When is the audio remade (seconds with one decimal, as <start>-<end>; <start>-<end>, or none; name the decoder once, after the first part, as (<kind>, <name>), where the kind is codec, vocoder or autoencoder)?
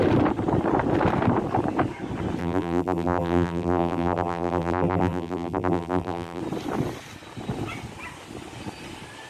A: 2.4-6.4 (vocoder, BigVGAN v2)